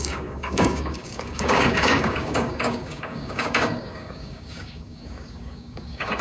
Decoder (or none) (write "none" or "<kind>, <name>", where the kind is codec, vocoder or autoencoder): codec, DAC